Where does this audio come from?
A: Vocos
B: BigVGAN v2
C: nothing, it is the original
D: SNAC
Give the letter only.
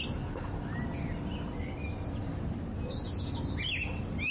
C